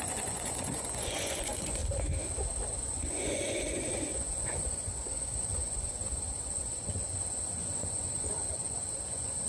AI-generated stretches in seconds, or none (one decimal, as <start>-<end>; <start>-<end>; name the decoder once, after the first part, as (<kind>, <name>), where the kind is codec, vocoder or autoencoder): 0.0-1.8 (vocoder, Vocos); 2.8-9.5